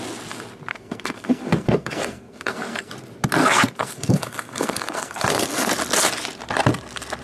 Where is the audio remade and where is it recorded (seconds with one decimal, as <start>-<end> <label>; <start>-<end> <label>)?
0.0-0.7 recorded; 0.7-2.9 remade; 2.9-3.4 recorded; 3.4-5.7 remade; 5.7-7.2 recorded